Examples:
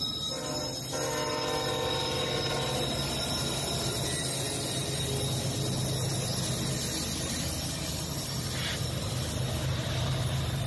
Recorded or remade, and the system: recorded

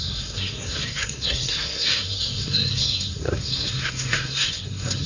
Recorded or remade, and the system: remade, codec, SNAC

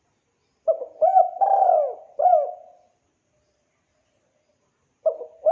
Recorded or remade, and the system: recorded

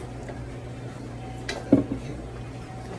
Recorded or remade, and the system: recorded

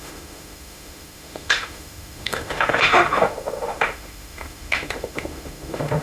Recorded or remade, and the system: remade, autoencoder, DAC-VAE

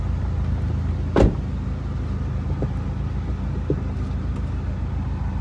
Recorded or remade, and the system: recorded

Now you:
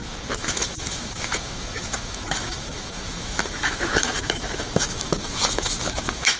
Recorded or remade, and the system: remade, autoencoder, DAC-VAE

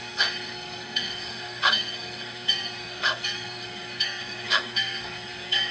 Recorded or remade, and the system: remade, codec, SNAC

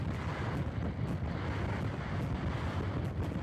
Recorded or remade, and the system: recorded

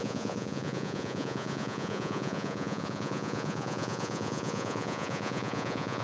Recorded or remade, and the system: remade, vocoder, Vocos